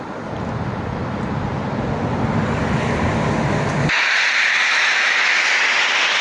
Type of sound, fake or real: real